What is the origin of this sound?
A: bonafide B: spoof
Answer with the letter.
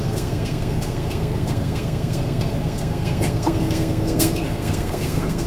B